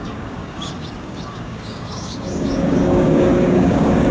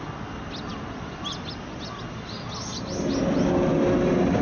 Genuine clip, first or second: second